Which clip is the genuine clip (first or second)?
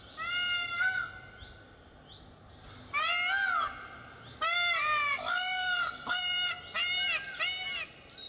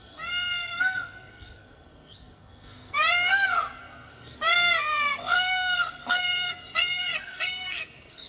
first